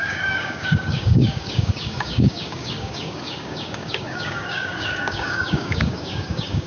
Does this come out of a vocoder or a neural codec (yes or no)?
yes